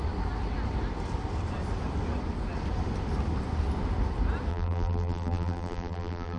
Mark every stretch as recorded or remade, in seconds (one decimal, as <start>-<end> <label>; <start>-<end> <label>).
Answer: 0.0-4.5 recorded; 4.5-6.4 remade